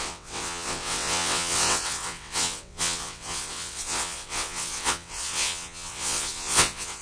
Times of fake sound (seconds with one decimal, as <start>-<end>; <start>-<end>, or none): 0.0-7.0